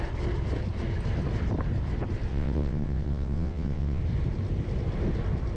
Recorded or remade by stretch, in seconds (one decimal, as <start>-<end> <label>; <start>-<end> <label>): 0.0-2.3 recorded; 2.3-4.0 remade; 4.0-5.6 recorded